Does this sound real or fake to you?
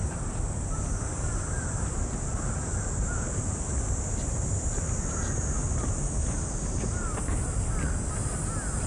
real